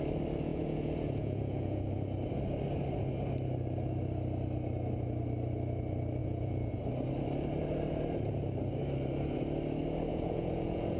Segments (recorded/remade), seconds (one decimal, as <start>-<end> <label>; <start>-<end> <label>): 0.0-0.5 recorded; 0.5-1.8 remade; 1.8-6.2 recorded; 6.2-6.8 remade; 6.8-10.1 recorded; 10.1-11.0 remade